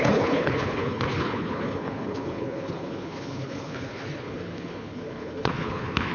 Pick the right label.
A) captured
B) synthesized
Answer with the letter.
B